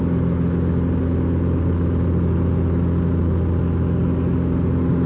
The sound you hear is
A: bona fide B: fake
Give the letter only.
A